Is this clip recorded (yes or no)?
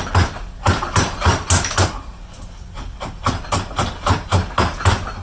yes